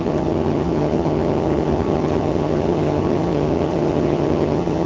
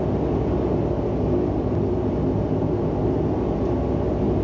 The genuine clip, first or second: second